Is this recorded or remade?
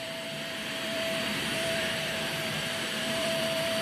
remade